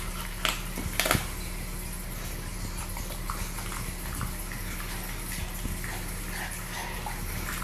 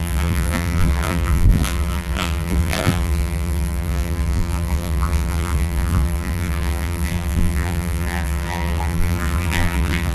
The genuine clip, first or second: first